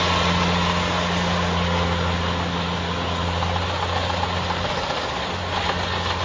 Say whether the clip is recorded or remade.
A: recorded